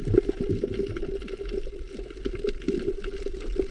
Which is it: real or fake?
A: real